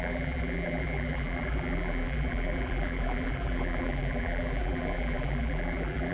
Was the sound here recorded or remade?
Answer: remade